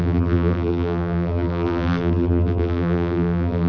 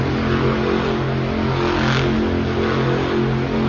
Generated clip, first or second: first